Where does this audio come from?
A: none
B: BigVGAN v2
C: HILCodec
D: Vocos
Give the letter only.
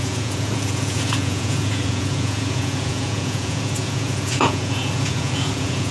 D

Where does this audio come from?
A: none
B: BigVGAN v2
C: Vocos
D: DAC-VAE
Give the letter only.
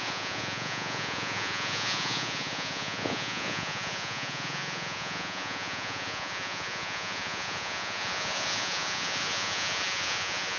C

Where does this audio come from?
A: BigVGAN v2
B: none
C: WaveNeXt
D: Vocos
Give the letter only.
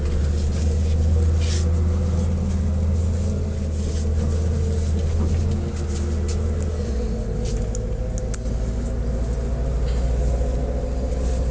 B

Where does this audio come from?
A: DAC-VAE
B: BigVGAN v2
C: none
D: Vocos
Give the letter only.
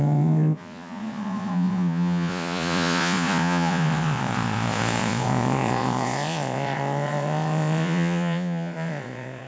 D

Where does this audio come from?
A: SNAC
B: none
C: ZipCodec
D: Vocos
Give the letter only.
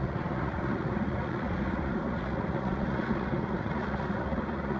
D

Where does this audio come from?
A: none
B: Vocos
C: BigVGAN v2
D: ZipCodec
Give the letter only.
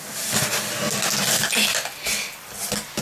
A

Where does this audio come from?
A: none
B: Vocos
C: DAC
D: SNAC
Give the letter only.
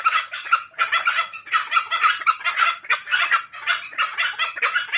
A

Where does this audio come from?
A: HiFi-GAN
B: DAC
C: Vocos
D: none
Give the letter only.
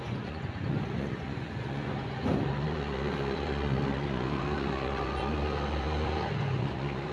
C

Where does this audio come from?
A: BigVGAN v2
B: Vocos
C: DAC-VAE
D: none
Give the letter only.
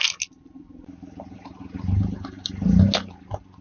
D